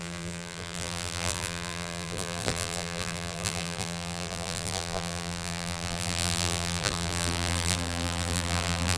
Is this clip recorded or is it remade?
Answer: remade